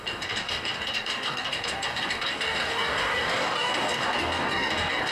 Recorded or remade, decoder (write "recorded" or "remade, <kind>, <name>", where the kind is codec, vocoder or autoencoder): remade, codec, DAC